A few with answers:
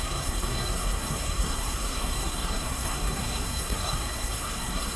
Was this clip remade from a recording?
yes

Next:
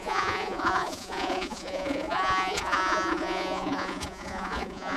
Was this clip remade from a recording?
yes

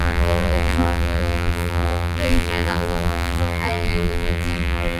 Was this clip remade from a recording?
yes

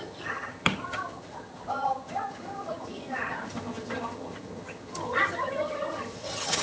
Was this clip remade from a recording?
yes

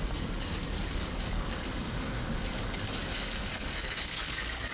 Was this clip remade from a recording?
yes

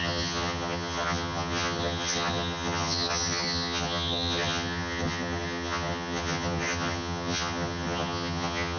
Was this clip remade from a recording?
yes